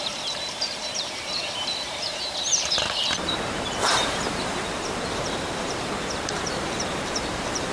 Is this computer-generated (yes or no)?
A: yes